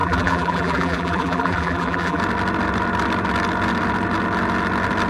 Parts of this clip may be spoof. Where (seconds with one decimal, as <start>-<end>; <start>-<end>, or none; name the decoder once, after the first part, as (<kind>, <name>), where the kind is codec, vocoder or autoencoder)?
0.0-2.2 (vocoder, BigVGAN v2)

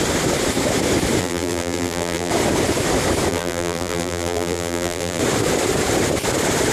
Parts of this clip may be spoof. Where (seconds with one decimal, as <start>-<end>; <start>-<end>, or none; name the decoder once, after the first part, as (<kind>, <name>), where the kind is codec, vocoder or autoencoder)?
1.2-2.3 (vocoder, BigVGAN v2); 3.3-5.2

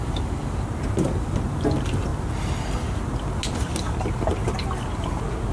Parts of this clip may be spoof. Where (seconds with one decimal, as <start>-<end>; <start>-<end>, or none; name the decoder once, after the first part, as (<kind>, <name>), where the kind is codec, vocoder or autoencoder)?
none

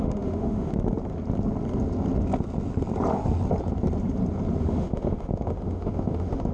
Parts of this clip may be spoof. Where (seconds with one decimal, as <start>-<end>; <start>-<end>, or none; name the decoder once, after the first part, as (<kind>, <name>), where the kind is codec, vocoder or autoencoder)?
0.0-0.7 (autoencoder, DAC-VAE); 4.6-6.5

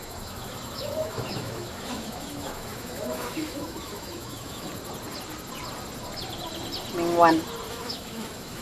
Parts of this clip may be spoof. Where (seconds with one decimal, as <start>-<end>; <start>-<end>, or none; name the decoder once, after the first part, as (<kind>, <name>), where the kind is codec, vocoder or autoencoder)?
0.0-4.7 (autoencoder, DAC-VAE); 7.7-8.6

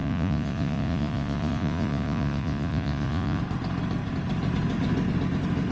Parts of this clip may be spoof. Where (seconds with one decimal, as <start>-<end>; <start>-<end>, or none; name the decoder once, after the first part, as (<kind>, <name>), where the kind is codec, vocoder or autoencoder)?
0.0-3.4 (vocoder, Vocos)